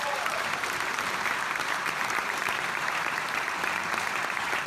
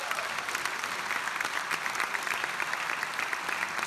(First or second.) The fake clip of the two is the first